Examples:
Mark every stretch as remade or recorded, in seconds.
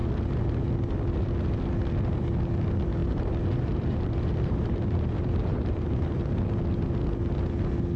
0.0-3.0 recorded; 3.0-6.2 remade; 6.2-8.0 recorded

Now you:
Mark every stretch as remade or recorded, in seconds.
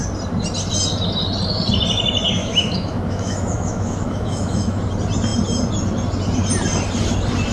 0.0-2.4 recorded; 2.4-4.8 remade; 4.8-7.5 recorded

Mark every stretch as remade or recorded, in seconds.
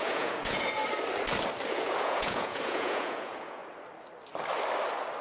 0.0-0.8 remade; 0.8-1.7 recorded; 1.7-3.6 remade; 3.6-5.2 recorded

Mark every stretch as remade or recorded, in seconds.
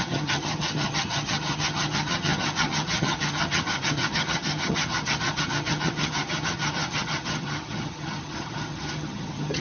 0.0-9.6 remade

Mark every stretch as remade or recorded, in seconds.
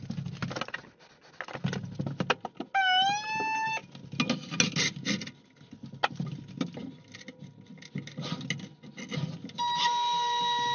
0.0-10.7 recorded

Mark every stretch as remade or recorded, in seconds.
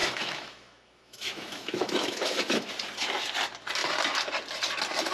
0.0-2.7 remade; 2.7-5.1 recorded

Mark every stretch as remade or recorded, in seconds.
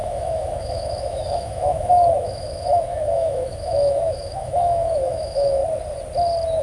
0.0-5.6 remade; 5.6-6.6 recorded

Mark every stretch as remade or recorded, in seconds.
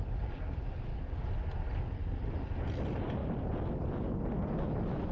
0.0-0.9 remade; 0.9-2.0 recorded; 2.0-3.2 remade; 3.2-3.7 recorded; 3.7-5.1 remade